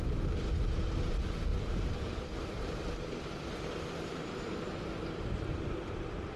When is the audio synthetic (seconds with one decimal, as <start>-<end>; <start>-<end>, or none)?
1.5-3.5; 4.1-5.8